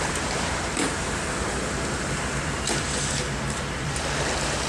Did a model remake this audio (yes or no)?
yes